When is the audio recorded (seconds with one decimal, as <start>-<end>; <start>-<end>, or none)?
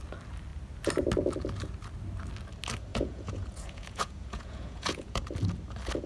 0.0-2.9; 5.2-6.1